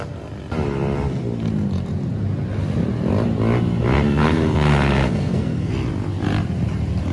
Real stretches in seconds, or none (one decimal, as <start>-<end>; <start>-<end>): 0.0-4.2; 5.7-7.1